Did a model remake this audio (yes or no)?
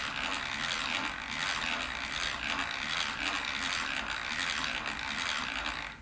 no